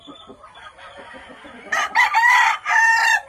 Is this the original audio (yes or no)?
no